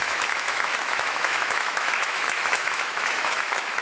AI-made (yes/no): yes